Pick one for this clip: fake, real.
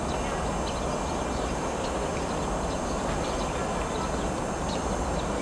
real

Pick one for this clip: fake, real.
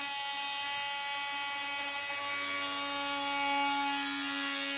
real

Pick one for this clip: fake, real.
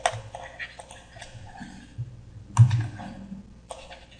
real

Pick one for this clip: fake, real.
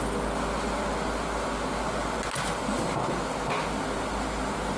real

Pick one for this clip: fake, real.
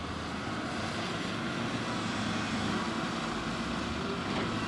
real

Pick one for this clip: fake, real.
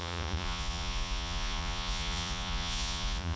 fake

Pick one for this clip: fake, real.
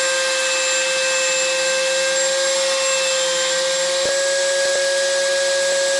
real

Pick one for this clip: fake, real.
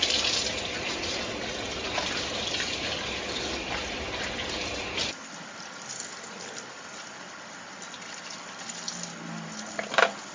real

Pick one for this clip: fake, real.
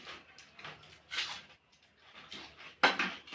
real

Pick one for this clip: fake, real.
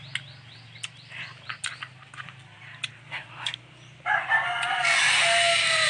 real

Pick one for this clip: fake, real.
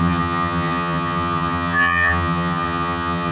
fake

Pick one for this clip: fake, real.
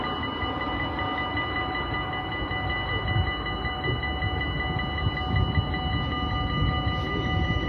real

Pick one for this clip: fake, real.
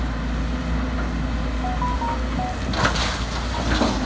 real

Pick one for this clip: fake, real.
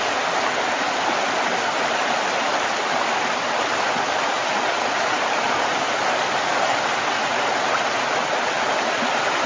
real